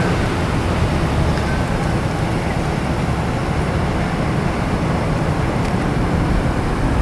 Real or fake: real